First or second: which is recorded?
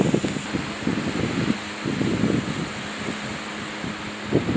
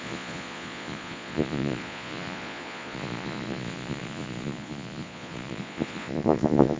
first